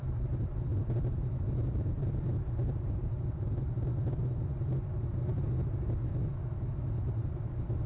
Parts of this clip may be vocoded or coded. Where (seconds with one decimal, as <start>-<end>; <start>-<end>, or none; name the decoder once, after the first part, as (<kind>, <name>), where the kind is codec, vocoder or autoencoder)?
6.1-6.9 (autoencoder, DAC-VAE)